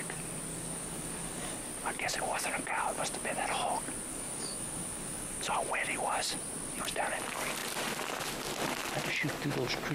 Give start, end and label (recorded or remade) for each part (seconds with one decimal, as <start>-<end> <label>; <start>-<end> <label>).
0.0-0.5 recorded; 0.5-1.6 remade; 1.6-4.1 recorded; 4.1-5.4 remade; 5.4-9.9 recorded

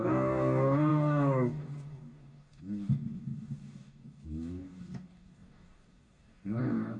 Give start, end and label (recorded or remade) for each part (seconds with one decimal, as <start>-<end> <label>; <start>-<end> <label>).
0.0-7.0 remade

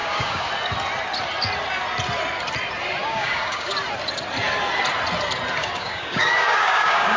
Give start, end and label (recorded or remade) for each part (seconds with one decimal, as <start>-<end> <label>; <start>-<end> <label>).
0.0-0.5 remade; 0.5-3.0 recorded; 3.0-3.7 remade; 3.7-5.6 recorded; 5.6-7.2 remade

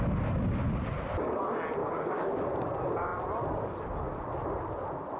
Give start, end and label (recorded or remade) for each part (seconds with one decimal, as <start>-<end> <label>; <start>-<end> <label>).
0.0-1.8 recorded; 1.8-2.6 remade; 2.6-5.2 recorded

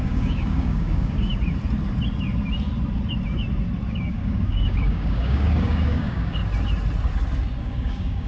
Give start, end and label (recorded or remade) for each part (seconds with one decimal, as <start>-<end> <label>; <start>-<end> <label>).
0.0-1.3 remade; 1.3-3.9 recorded; 3.9-6.4 remade; 6.4-7.6 recorded; 7.6-8.3 remade

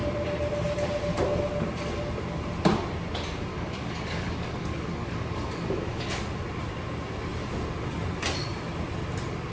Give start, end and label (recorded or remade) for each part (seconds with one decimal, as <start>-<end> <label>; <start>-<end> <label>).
0.0-3.5 recorded; 3.5-6.2 remade; 6.2-9.5 recorded

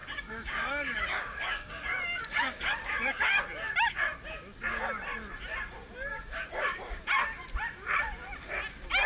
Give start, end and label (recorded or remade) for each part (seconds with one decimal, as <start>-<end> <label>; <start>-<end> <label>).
0.0-3.4 remade; 3.4-6.1 recorded; 6.1-7.0 remade; 7.0-9.1 recorded

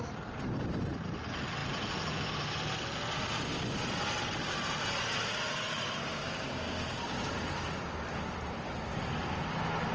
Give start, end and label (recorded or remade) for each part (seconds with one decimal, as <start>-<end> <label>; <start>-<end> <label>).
0.0-6.1 recorded; 6.1-7.3 remade; 7.3-9.9 recorded